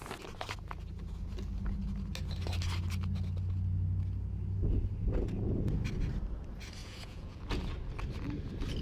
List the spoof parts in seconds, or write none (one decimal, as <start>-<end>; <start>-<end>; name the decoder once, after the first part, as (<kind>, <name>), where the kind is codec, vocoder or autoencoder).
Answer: 6.8-7.6 (vocoder, Vocos)